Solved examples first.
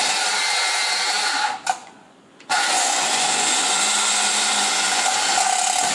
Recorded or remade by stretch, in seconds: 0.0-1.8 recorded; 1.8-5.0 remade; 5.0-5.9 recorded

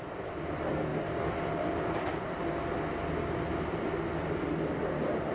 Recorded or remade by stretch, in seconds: 0.0-5.3 recorded

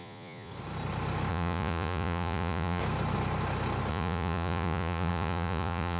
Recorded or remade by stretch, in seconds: 0.0-0.5 remade; 0.5-1.3 recorded; 1.3-2.8 remade; 2.8-3.9 recorded; 3.9-6.0 remade

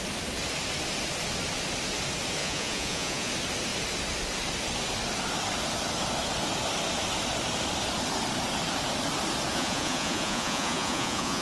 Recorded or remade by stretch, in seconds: 0.0-2.4 recorded; 2.4-3.3 remade; 3.3-9.5 recorded; 9.5-11.4 remade